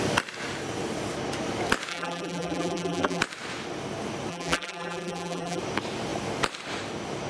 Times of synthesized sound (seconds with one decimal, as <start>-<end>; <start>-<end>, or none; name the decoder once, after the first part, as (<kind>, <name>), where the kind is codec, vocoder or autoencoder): 1.9-3.2 (vocoder, BigVGAN v2); 4.3-5.6